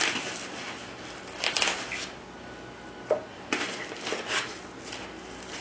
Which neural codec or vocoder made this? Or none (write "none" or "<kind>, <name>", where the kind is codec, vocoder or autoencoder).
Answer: none